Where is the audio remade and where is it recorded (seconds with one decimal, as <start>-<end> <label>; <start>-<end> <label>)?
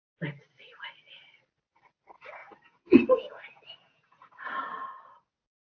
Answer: 0.0-2.4 recorded; 2.4-4.4 remade; 4.4-5.6 recorded